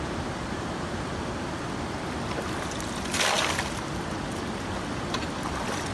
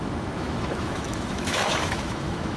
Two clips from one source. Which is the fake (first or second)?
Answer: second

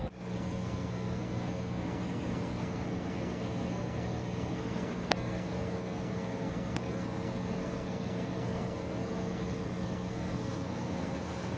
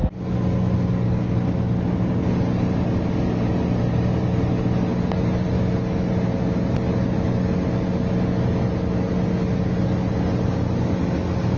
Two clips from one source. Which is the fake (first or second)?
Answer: first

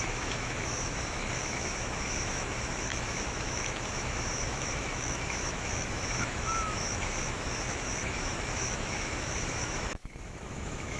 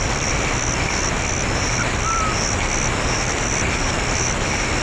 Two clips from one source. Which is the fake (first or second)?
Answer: first